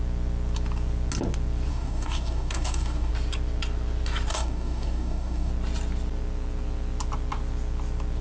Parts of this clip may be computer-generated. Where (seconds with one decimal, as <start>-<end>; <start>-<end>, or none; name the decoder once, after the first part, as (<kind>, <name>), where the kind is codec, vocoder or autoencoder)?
1.7-3.1 (codec, DAC); 4.3-5.5